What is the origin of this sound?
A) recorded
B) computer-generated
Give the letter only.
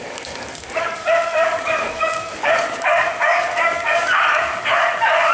B